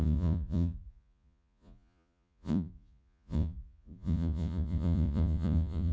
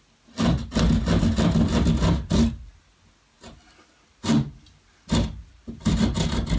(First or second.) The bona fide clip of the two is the second